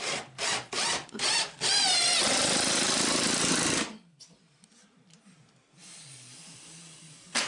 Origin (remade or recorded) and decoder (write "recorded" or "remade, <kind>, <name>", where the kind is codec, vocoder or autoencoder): remade, vocoder, BigVGAN v2